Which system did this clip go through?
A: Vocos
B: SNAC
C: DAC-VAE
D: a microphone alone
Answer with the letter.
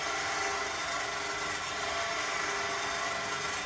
D